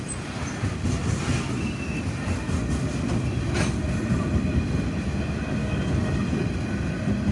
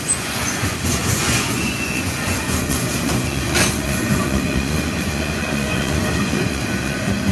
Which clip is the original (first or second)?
first